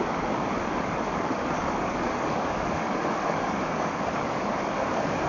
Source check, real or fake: fake